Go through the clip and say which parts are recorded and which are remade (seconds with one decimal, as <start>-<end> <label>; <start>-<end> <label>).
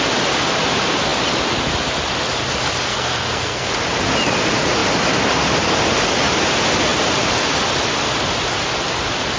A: 0.0-2.9 recorded; 2.9-3.7 remade; 3.7-9.4 recorded